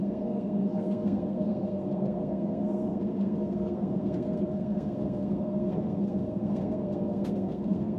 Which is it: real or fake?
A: fake